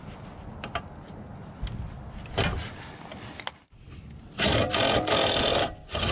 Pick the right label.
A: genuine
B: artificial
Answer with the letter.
A